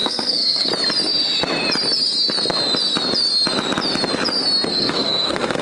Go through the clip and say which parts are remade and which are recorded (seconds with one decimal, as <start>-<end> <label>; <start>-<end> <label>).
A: 0.0-0.7 remade; 0.7-4.7 recorded; 4.7-5.6 remade